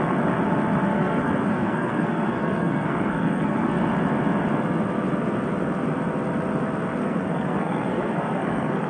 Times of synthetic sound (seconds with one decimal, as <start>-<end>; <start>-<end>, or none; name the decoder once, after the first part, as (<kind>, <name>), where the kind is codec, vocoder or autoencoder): 0.9-3.9 (codec, SNAC); 7.0-8.9